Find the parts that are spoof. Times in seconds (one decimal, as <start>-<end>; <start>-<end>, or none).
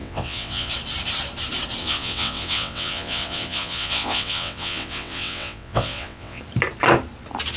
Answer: 0.0-0.7; 1.8-6.4